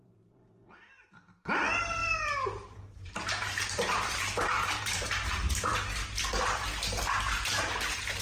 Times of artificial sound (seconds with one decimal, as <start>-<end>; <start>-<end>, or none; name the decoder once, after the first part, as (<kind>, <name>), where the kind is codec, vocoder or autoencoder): 2.0-5.1 (vocoder, BigVGAN v2)